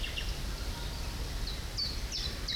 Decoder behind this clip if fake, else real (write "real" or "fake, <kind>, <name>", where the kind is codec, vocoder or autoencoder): real